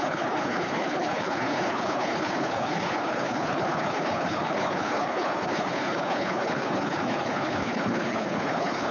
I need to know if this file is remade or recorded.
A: remade